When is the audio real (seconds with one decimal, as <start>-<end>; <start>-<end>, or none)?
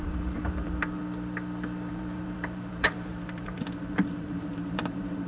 1.0-1.9